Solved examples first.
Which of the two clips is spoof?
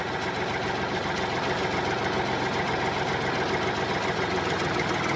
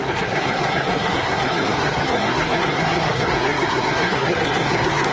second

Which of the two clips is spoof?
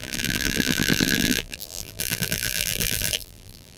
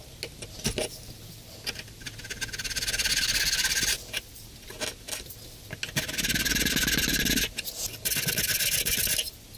first